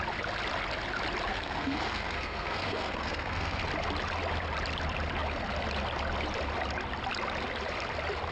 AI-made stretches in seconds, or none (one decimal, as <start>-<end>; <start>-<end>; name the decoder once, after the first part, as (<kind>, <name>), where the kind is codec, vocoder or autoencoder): 1.3-3.6 (codec, SNAC)